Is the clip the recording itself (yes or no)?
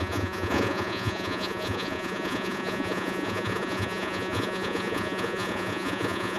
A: no